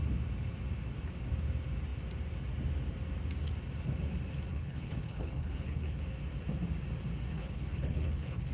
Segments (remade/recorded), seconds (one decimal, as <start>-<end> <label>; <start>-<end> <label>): 0.0-4.5 recorded; 4.5-6.0 remade; 6.0-7.3 recorded; 7.3-8.5 remade